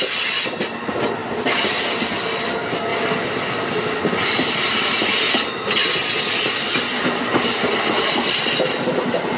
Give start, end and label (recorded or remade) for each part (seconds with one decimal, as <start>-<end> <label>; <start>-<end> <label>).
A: 0.0-1.2 recorded; 1.2-1.8 remade; 1.8-9.4 recorded